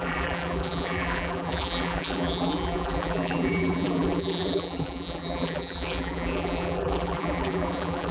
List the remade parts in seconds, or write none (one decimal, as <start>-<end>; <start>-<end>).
0.0-8.1